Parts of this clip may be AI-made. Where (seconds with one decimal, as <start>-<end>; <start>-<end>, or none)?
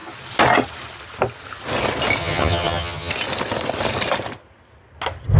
2.2-3.1